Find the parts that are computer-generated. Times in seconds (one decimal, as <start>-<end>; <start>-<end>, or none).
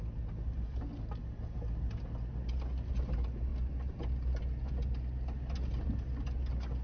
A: none